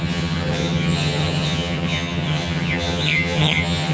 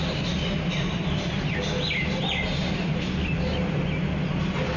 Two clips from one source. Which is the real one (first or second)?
second